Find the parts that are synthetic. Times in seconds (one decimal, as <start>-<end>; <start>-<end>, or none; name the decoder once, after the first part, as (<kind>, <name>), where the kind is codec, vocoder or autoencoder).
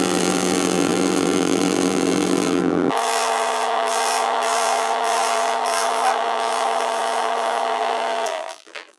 0.0-9.0 (vocoder, BigVGAN v2)